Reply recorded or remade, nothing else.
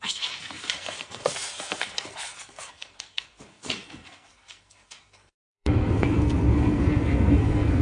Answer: remade